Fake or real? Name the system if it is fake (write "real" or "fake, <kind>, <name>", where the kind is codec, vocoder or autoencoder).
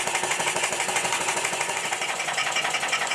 fake, vocoder, Vocos